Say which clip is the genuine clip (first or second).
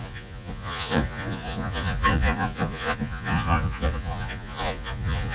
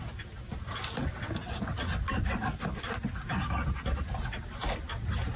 second